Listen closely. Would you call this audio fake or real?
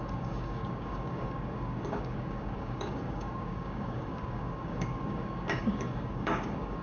fake